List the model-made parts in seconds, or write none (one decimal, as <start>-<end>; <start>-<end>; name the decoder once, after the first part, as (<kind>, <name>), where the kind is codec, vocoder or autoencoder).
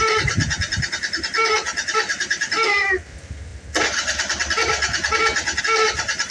none